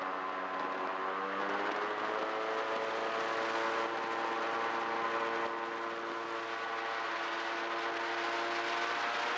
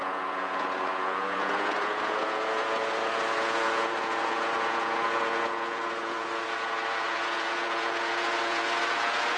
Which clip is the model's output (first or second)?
second